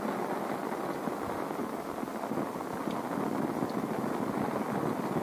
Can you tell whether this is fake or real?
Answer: real